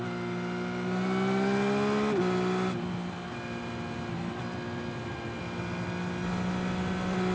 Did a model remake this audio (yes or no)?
no